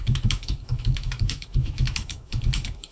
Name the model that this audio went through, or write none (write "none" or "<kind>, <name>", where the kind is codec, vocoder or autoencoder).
autoencoder, DAC-VAE